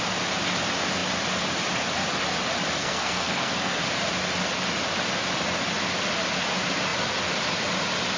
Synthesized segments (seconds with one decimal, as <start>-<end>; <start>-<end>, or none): 2.8-3.8